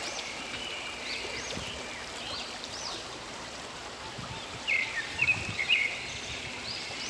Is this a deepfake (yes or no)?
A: yes